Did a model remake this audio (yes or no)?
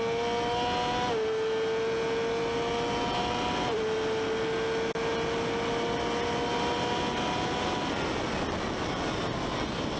no